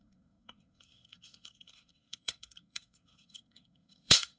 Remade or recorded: remade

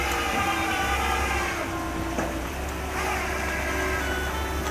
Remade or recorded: recorded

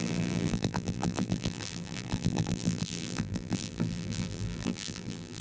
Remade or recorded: remade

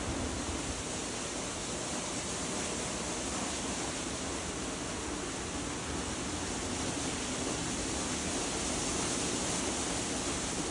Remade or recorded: recorded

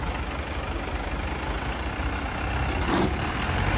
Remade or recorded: recorded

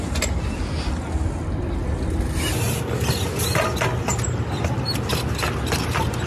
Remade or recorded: recorded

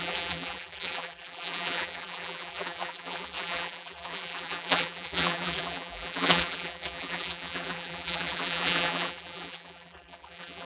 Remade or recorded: remade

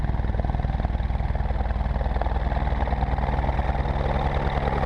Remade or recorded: recorded